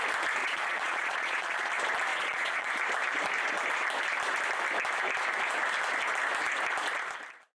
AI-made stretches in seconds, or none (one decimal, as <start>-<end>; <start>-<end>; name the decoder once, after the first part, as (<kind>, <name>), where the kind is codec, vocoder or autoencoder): 0.4-1.7 (vocoder, Vocos); 2.1-2.7